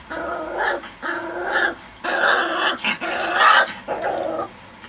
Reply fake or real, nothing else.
real